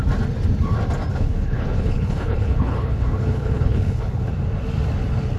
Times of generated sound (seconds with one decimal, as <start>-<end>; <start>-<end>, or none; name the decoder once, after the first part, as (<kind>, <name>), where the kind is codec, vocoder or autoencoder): 1.1-4.3 (codec, HILCodec)